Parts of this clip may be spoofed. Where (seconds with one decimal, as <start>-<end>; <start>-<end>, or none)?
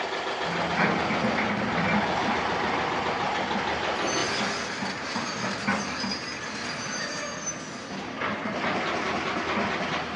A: none